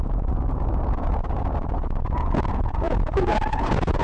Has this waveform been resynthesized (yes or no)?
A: yes